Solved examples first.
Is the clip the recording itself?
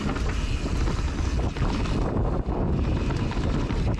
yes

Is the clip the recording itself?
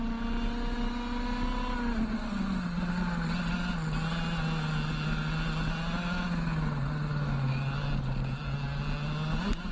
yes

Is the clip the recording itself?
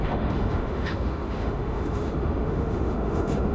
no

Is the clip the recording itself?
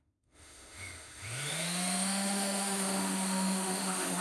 no